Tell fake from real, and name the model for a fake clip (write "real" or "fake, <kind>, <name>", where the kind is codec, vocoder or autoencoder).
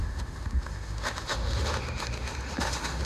fake, autoencoder, DAC-VAE